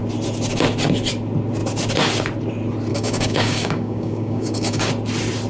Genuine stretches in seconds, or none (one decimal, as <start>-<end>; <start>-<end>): 0.0-2.9; 4.9-5.5

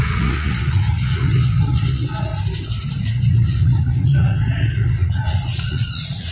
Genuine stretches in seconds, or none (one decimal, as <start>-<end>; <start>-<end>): 2.3-3.0